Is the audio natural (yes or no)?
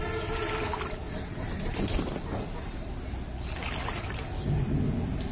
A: yes